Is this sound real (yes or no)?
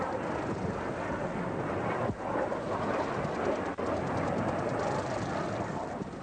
yes